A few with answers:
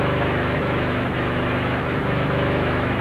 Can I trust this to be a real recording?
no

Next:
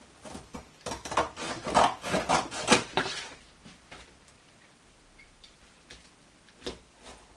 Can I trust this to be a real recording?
no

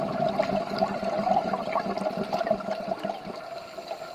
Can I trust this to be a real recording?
yes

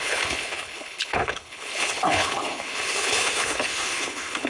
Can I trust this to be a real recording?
no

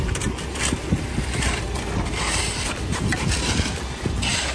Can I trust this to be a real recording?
yes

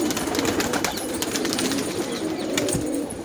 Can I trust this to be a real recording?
yes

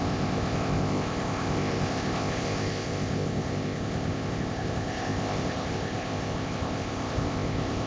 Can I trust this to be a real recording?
no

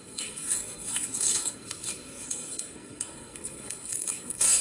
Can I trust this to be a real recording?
no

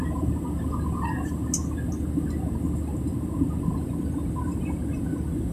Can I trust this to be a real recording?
yes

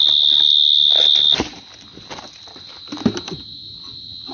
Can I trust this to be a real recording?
yes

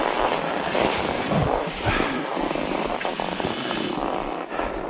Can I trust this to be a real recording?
yes